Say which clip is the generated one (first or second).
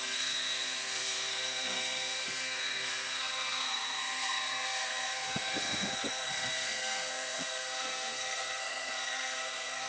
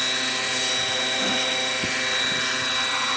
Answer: first